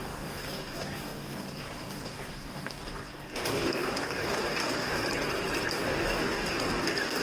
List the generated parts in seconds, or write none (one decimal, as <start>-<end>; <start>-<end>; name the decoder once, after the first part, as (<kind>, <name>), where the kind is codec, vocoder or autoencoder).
0.0-5.0 (codec, DAC); 5.7-7.2